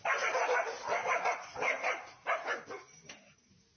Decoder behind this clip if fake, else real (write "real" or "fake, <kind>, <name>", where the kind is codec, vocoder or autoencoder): real